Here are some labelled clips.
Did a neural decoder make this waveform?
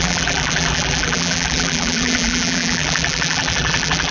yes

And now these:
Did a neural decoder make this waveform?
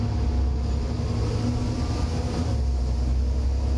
no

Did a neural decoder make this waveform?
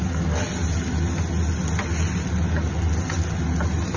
no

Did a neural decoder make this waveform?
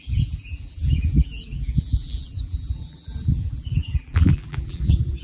yes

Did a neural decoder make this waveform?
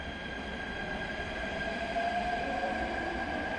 yes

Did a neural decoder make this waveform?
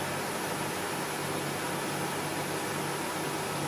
no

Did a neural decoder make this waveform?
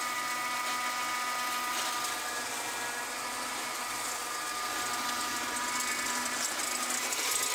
no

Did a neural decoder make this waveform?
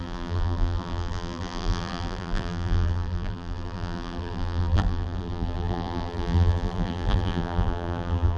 yes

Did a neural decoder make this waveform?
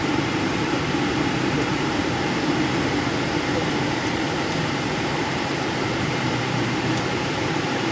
yes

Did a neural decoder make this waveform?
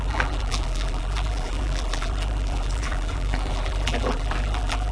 yes